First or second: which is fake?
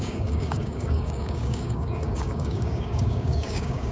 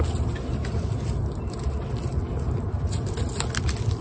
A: first